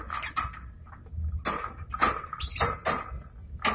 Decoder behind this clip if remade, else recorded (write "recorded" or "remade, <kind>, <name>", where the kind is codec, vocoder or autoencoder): recorded